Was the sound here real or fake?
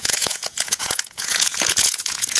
fake